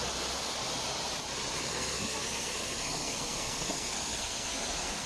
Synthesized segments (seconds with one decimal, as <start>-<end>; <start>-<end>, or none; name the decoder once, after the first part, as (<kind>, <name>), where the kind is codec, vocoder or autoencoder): 1.6-5.1 (codec, SNAC)